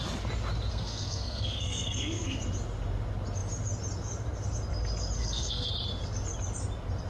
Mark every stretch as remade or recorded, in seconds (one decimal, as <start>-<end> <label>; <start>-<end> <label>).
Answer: 0.0-0.7 recorded; 0.7-2.4 remade; 2.4-5.2 recorded; 5.2-5.7 remade; 5.7-7.1 recorded